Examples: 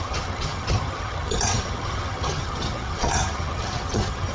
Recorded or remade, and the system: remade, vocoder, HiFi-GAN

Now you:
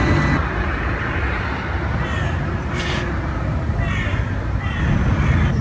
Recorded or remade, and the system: recorded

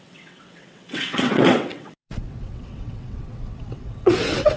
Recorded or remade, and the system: remade, vocoder, WaveNeXt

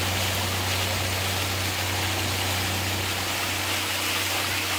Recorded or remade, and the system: recorded